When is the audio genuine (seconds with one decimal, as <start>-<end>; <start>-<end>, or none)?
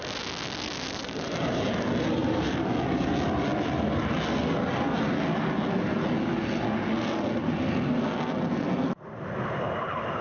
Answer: 0.0-10.2